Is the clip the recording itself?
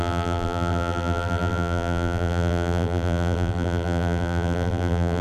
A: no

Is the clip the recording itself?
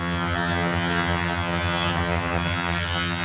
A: no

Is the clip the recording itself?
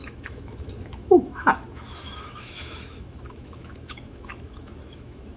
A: no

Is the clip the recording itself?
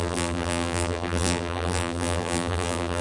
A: no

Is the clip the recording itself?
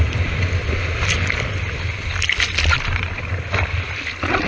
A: yes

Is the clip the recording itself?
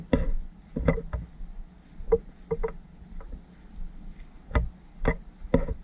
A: yes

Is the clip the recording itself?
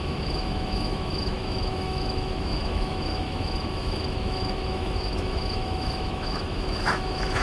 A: no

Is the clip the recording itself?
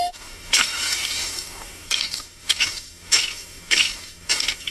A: no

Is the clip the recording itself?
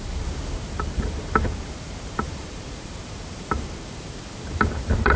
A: no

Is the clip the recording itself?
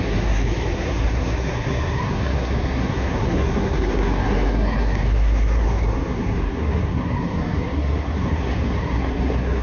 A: no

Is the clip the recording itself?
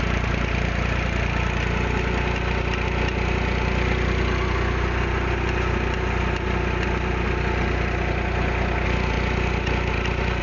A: yes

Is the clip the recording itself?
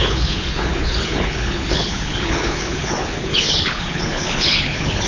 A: no